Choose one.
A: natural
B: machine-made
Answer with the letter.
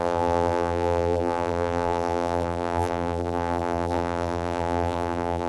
B